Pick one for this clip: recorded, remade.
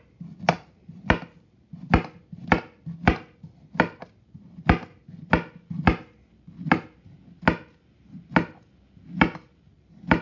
recorded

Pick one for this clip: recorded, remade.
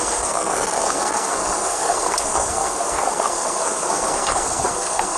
remade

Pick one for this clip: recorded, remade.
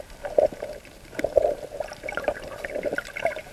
recorded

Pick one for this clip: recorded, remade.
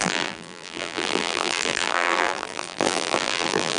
remade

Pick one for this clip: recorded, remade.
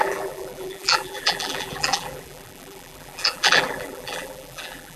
remade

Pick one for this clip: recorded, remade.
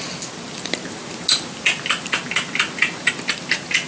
recorded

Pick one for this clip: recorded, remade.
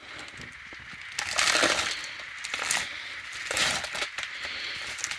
recorded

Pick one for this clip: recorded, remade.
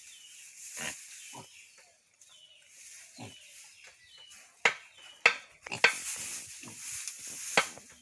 recorded